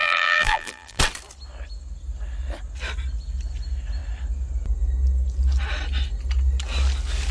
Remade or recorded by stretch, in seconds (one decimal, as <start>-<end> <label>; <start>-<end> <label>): 0.0-1.0 remade; 1.0-7.3 recorded